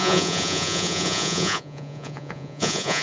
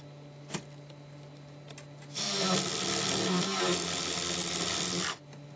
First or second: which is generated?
first